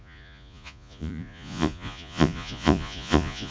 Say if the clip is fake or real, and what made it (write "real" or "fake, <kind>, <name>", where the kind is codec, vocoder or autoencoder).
fake, vocoder, Vocos